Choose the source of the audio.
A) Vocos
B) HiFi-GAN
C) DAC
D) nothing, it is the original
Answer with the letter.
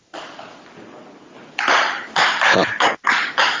D